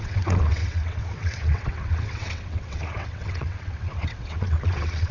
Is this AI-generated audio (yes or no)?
yes